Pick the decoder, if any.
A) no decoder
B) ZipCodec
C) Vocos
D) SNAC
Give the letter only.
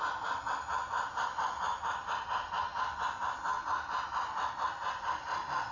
A